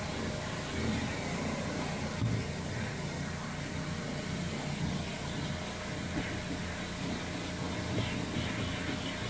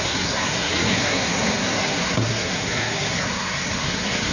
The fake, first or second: second